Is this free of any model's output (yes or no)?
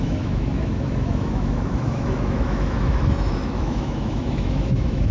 no